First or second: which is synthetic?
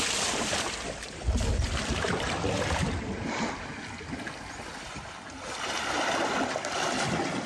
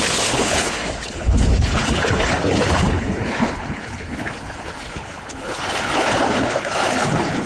second